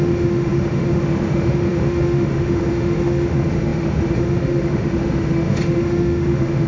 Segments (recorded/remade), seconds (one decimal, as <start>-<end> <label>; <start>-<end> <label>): 0.0-6.7 remade